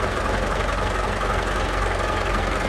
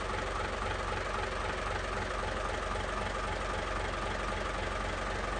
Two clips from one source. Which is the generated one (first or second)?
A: first